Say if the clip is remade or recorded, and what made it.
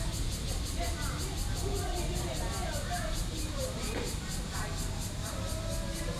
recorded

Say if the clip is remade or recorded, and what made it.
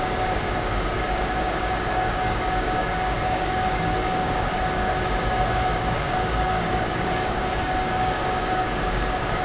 remade, codec, DAC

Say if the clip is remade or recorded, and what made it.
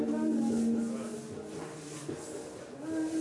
recorded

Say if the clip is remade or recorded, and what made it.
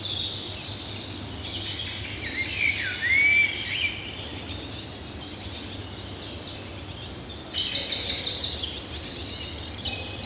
recorded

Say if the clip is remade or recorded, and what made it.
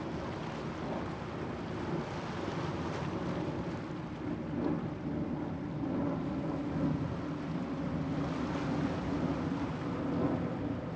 recorded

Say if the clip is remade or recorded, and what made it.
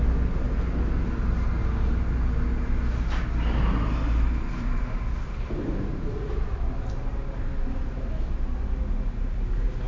recorded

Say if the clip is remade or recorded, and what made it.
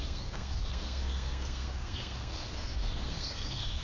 remade, codec, SNAC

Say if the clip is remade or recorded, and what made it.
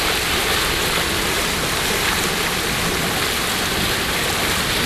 recorded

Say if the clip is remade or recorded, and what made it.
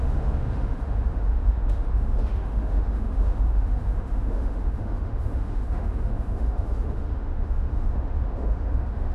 remade, autoencoder, DAC-VAE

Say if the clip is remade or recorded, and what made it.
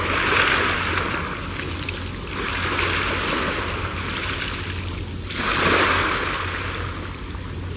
recorded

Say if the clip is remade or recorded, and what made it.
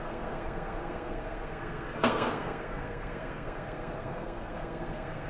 remade, codec, SNAC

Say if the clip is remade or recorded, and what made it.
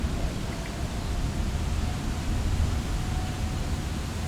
remade, vocoder, BigVGAN v2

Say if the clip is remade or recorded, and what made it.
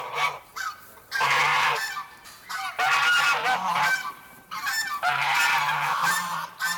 remade, vocoder, BigVGAN v2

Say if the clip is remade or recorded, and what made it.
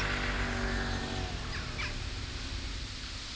recorded